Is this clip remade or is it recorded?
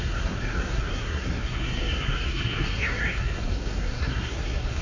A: remade